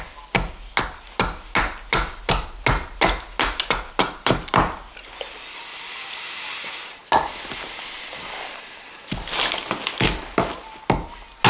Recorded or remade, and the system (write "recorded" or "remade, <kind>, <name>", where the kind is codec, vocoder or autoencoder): recorded